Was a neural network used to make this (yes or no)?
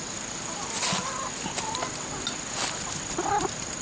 no